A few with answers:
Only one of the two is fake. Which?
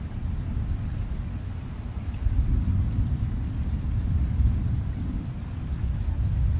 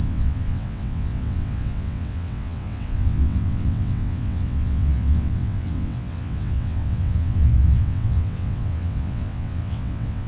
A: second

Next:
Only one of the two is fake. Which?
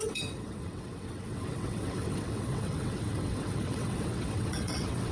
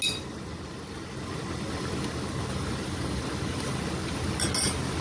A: first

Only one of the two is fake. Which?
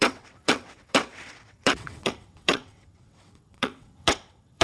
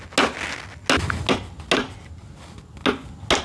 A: first